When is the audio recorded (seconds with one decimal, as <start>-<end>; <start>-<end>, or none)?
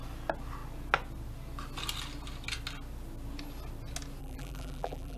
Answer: 0.0-4.2